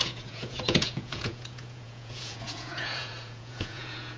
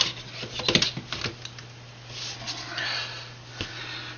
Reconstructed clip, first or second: first